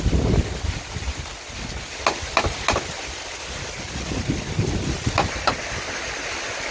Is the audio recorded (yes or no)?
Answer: yes